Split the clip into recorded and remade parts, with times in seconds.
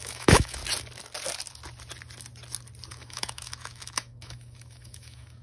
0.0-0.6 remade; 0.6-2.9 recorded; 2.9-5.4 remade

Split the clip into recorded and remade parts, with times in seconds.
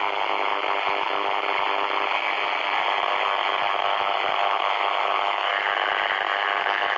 0.0-0.5 remade; 0.5-3.6 recorded; 3.6-5.5 remade; 5.5-6.6 recorded; 6.6-7.0 remade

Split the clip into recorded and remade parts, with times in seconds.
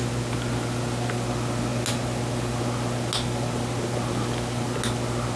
0.0-5.4 recorded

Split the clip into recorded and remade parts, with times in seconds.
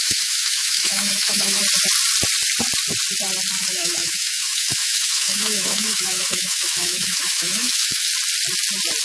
0.0-1.6 remade; 1.6-3.6 recorded; 3.6-8.1 remade; 8.1-9.0 recorded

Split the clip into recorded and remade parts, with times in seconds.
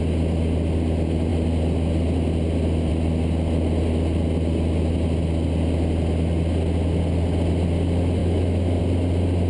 0.0-8.2 recorded; 8.2-8.8 remade; 8.8-9.5 recorded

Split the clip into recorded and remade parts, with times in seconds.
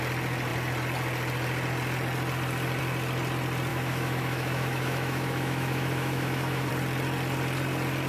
0.0-3.7 recorded; 3.7-6.7 remade; 6.7-8.1 recorded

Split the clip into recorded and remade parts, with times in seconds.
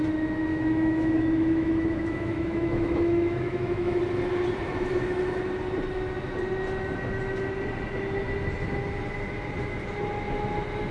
0.0-0.5 recorded; 0.5-4.0 remade; 4.0-10.9 recorded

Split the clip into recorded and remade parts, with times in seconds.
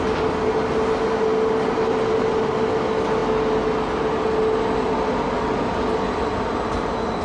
0.0-7.2 recorded